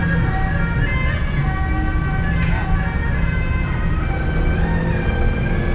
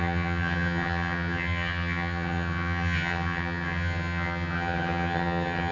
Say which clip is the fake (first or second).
second